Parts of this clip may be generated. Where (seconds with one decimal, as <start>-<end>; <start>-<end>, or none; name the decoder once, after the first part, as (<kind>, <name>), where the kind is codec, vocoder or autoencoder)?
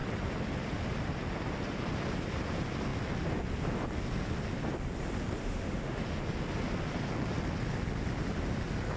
5.4-6.0 (autoencoder, DAC-VAE)